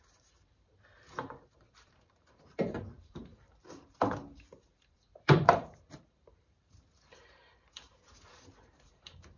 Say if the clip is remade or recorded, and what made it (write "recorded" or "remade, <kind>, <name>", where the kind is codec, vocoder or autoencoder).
remade, vocoder, BigVGAN v2